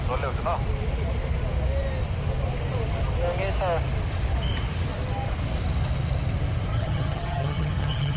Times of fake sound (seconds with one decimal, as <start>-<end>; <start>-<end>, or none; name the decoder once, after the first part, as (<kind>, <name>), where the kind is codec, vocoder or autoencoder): 6.7-8.2 (vocoder, HiFi-GAN)